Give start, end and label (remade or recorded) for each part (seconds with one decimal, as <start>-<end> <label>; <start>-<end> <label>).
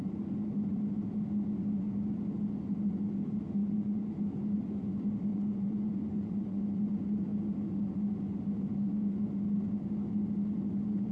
0.0-3.6 recorded; 3.6-4.1 remade; 4.1-5.3 recorded; 5.3-6.6 remade; 6.6-11.1 recorded